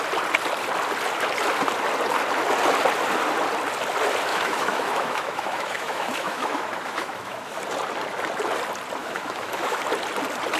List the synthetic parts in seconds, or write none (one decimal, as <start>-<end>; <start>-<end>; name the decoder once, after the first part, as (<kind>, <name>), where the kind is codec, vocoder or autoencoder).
4.3-7.6 (autoencoder, DAC-VAE); 9.0-9.8